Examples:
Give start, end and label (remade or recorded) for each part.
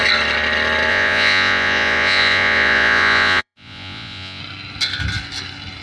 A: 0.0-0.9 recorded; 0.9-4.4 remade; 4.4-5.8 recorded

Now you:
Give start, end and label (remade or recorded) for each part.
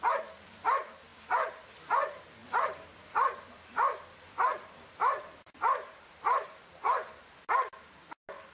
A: 0.0-1.1 recorded; 1.1-1.7 remade; 1.7-2.4 recorded; 2.4-6.6 remade; 6.6-8.5 recorded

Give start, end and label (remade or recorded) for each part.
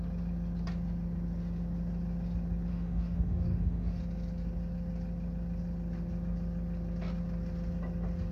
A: 0.0-2.7 recorded; 2.7-4.0 remade; 4.0-8.3 recorded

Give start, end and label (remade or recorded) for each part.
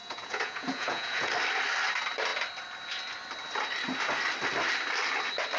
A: 0.0-1.3 remade; 1.3-5.6 recorded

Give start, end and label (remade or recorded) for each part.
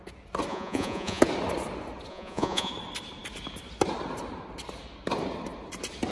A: 0.0-0.5 recorded; 0.5-1.2 remade; 1.2-2.1 recorded; 2.1-2.7 remade; 2.7-6.1 recorded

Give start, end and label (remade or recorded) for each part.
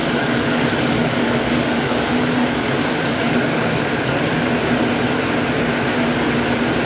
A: 0.0-4.1 remade; 4.1-6.9 recorded